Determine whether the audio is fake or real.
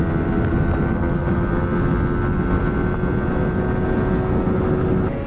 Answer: real